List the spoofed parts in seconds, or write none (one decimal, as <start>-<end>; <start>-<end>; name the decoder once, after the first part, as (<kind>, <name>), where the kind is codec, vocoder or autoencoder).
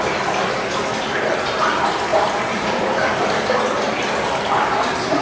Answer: none